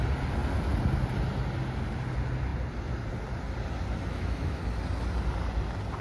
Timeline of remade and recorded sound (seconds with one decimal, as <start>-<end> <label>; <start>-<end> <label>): 0.0-4.1 recorded; 4.1-4.6 remade; 4.6-6.0 recorded